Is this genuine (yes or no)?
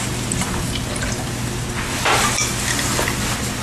yes